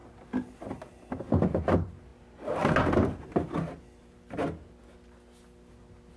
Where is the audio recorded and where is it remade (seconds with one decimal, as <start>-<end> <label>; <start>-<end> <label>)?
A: 0.0-6.2 recorded